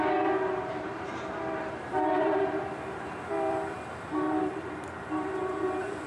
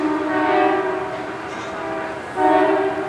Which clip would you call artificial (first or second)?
first